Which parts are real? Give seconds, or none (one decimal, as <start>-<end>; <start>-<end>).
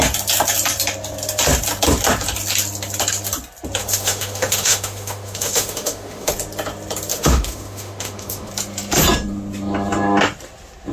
0.0-3.8; 6.3-7.1; 8.5-10.9